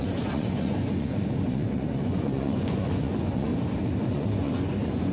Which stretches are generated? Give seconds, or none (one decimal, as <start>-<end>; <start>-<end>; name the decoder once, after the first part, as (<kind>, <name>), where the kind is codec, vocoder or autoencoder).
0.0-3.5 (vocoder, Vocos); 4.0-5.1